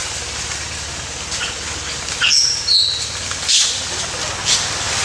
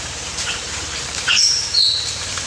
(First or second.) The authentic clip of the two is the first